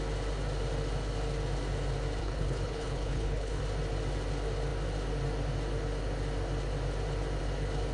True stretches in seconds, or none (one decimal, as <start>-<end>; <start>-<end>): 0.0-2.2; 3.6-7.9